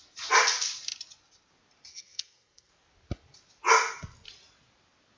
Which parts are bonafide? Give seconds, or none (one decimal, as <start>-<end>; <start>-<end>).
0.0-1.9; 2.7-5.2